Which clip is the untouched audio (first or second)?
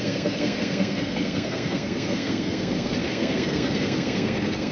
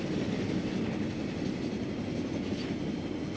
second